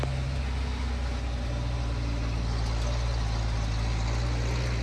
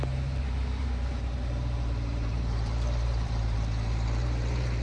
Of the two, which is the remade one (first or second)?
second